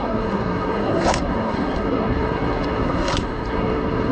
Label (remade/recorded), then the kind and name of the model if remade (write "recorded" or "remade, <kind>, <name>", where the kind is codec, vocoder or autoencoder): remade, codec, SNAC